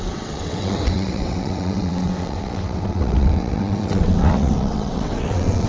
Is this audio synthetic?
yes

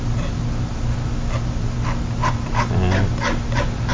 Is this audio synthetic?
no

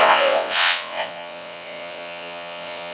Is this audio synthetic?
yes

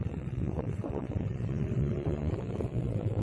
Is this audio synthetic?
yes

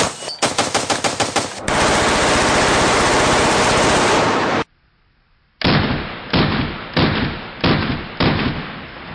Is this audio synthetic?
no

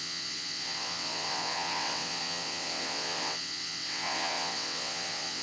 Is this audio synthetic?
yes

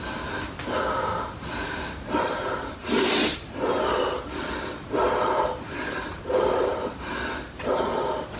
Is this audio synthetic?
no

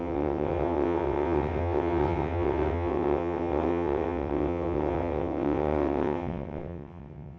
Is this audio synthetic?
yes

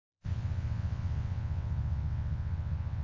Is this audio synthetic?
yes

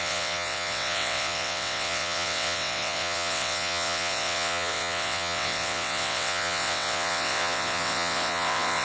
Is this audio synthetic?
yes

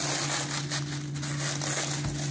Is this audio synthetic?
no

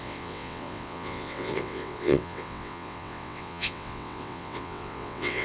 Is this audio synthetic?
yes